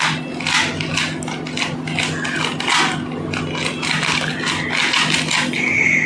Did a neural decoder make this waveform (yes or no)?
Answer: no